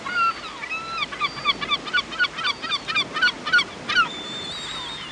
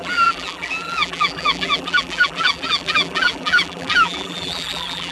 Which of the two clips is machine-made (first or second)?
second